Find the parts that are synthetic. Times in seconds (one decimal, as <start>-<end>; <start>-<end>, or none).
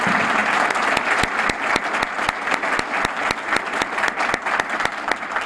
none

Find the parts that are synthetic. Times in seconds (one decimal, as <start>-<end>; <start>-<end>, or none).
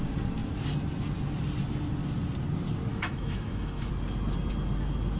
2.9-3.9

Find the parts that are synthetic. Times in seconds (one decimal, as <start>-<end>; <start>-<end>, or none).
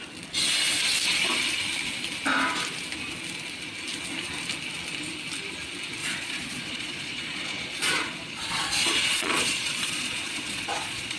6.0-11.2